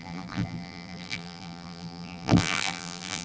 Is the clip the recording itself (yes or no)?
no